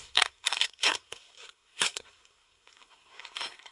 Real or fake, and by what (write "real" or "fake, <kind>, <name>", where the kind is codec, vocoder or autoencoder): fake, codec, SNAC